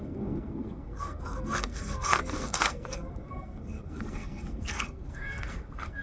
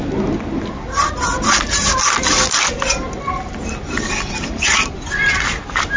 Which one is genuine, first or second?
second